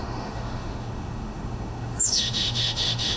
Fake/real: fake